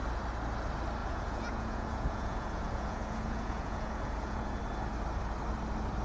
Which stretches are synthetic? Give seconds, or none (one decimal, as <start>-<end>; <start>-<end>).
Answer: 1.0-4.6